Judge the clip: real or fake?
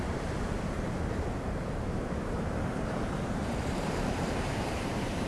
fake